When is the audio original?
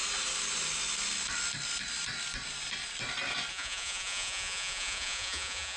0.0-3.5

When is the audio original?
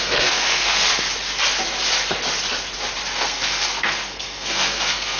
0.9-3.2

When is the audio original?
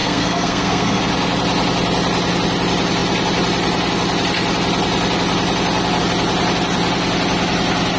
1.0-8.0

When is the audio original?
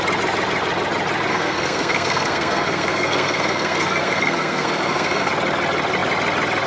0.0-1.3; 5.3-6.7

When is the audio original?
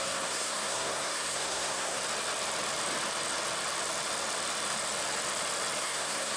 2.0-5.8